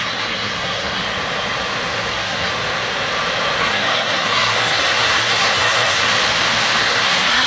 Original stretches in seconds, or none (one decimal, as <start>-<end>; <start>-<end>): 1.0-2.1; 2.5-3.6; 6.1-6.8

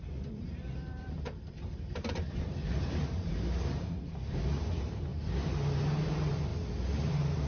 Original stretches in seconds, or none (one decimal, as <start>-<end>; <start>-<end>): 5.1-6.0; 6.5-7.1

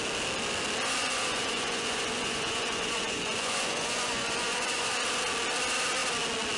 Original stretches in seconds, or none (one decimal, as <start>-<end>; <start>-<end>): 0.0-1.0; 5.0-6.6

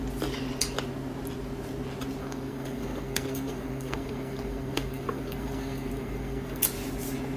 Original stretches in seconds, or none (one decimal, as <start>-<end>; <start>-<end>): 0.0-2.2; 6.6-7.4

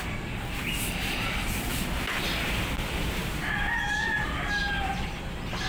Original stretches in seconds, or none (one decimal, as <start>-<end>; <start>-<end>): 0.0-5.7

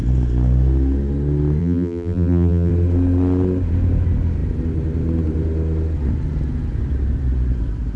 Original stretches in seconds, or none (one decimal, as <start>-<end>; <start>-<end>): 0.0-1.6; 2.7-8.0